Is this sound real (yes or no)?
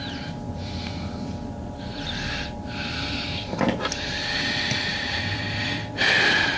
no